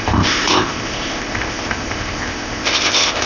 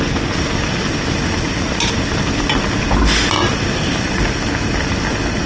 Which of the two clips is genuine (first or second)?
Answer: second